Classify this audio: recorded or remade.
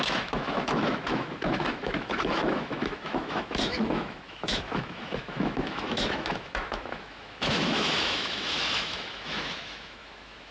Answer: remade